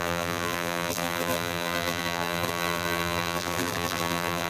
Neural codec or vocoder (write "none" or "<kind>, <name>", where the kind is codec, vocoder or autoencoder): vocoder, BigVGAN v2